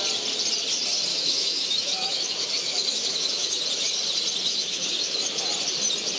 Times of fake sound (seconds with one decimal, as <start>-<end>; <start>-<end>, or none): 1.1-3.6; 4.5-5.4